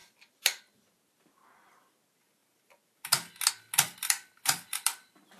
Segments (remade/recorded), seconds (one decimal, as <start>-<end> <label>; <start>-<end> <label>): 0.0-0.6 remade; 0.6-4.0 recorded; 4.0-5.4 remade